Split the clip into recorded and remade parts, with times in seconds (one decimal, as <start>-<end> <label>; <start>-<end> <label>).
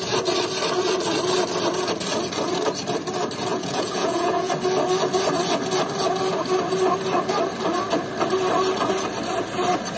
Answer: 0.0-3.5 recorded; 3.5-4.5 remade; 4.5-10.0 recorded